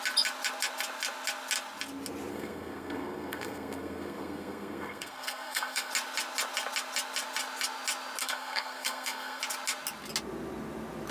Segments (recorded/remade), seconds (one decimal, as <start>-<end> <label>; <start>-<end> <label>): 0.0-2.3 recorded; 2.3-5.9 remade; 5.9-8.2 recorded; 8.2-9.4 remade; 9.4-11.1 recorded